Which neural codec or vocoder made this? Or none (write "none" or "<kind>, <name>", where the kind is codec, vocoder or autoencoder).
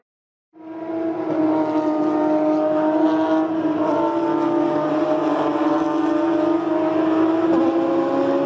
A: none